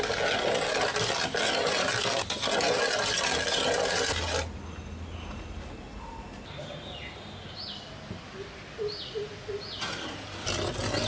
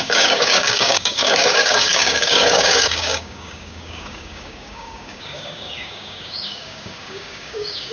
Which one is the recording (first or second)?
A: first